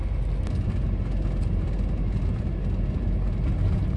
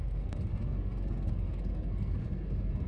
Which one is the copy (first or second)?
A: second